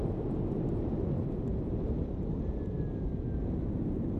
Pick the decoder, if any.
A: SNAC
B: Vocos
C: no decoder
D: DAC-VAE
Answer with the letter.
C